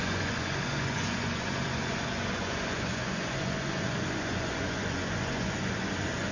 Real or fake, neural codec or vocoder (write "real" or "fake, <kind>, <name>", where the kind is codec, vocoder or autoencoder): fake, vocoder, Vocos